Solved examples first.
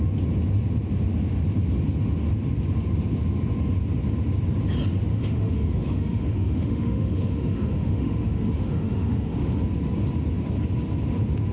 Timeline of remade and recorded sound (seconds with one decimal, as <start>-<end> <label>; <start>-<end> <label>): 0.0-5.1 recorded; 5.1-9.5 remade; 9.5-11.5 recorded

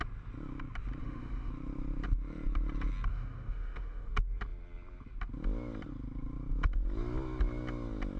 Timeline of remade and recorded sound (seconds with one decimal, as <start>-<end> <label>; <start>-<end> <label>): 0.0-1.0 recorded; 1.0-1.5 remade; 1.5-3.1 recorded; 3.1-4.1 remade; 4.1-8.2 recorded

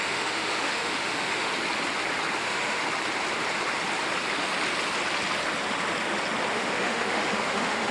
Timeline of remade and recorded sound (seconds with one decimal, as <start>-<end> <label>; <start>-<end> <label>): 0.0-1.5 remade; 1.5-2.4 recorded; 2.4-2.8 remade; 2.8-6.5 recorded; 6.5-7.9 remade

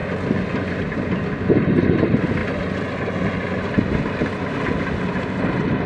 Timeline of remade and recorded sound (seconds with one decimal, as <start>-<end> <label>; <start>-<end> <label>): 0.0-5.9 recorded

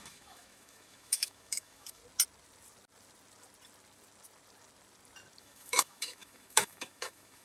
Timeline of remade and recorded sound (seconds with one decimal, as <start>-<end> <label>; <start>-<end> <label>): 0.0-2.0 remade; 2.0-5.4 recorded; 5.4-7.4 remade

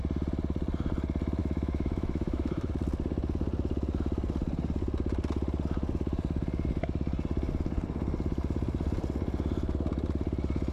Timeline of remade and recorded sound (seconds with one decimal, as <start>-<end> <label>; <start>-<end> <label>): 0.0-1.4 recorded; 1.4-2.7 remade; 2.7-10.7 recorded